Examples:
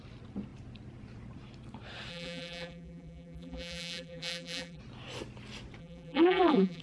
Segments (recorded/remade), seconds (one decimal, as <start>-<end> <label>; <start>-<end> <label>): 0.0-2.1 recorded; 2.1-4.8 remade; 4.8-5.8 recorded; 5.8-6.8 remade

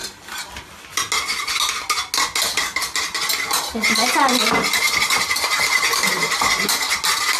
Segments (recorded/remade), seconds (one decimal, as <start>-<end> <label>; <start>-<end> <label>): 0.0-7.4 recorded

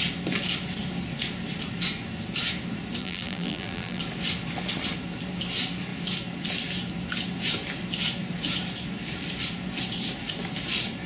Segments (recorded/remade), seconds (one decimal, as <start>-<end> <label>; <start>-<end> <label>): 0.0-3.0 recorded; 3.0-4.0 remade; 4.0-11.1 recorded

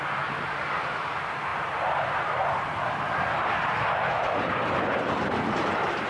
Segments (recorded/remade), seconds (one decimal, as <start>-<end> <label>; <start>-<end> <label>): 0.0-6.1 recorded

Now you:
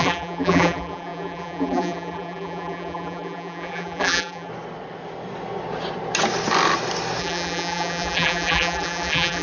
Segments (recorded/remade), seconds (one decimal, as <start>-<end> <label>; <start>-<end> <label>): 0.0-4.5 remade; 4.5-7.2 recorded; 7.2-9.4 remade

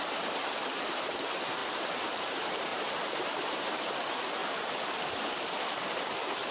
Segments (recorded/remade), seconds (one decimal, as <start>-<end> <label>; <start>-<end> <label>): 0.0-1.6 recorded; 1.6-2.2 remade; 2.2-2.7 recorded; 2.7-3.6 remade; 3.6-4.4 recorded; 4.4-5.6 remade; 5.6-6.5 recorded

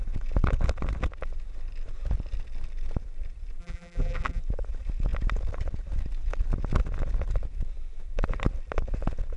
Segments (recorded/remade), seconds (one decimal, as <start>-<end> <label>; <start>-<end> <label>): 0.0-3.6 recorded; 3.6-4.4 remade; 4.4-9.4 recorded

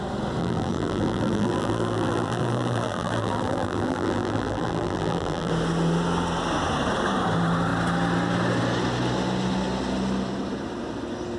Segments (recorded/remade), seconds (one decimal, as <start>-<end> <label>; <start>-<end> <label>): 0.0-0.4 recorded; 0.4-5.5 remade; 5.5-11.4 recorded